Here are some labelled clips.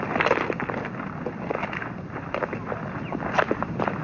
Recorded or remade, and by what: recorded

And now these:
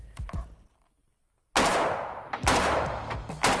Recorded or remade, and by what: recorded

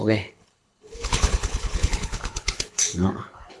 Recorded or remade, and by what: remade, codec, HILCodec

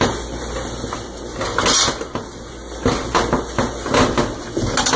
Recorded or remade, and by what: recorded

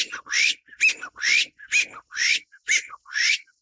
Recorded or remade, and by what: recorded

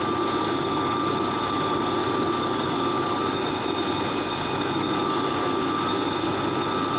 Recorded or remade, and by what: recorded